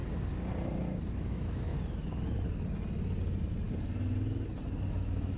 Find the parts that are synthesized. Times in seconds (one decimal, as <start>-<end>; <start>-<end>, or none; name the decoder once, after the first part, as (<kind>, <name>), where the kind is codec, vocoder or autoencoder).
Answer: 1.1-1.7 (autoencoder, DAC-VAE); 4.9-5.4